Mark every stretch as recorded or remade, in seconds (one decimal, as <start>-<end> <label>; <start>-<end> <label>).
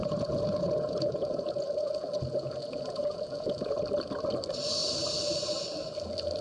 0.0-3.8 remade; 3.8-6.4 recorded